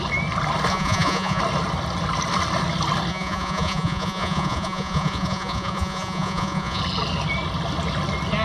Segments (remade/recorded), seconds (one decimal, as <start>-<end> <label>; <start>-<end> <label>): 0.0-0.7 recorded; 0.7-1.4 remade; 1.4-3.1 recorded; 3.1-6.8 remade; 6.8-8.4 recorded